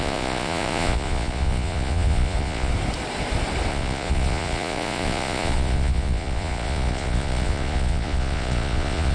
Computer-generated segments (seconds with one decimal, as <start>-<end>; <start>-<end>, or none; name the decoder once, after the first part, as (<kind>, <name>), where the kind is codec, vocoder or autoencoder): 0.0-2.7 (vocoder, Vocos); 3.7-9.1

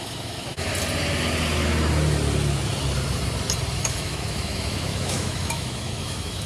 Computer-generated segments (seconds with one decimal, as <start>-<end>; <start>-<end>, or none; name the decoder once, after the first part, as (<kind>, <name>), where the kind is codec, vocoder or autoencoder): 0.0-0.7 (autoencoder, DAC-VAE); 3.8-6.5

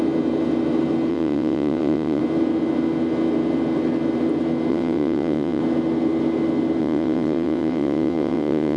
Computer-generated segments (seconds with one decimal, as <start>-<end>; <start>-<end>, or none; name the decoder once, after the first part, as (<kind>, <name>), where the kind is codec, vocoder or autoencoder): 1.1-2.2 (vocoder, WaveNeXt); 4.7-5.6; 6.8-8.8